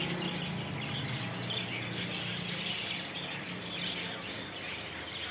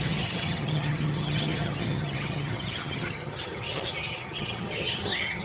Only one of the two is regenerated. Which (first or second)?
second